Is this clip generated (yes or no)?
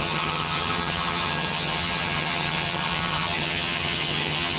yes